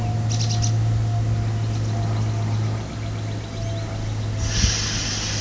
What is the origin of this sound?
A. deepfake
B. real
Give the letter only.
B